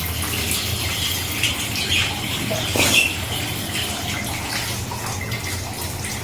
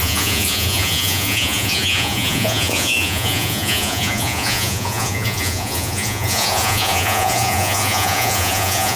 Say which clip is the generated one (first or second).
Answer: second